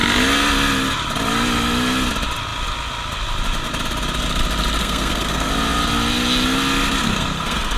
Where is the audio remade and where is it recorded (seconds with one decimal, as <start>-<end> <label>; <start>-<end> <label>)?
0.0-4.8 recorded; 4.8-5.5 remade; 5.5-7.0 recorded; 7.0-7.8 remade